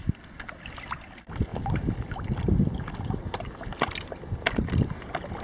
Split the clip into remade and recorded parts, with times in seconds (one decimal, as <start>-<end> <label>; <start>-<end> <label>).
0.0-5.4 recorded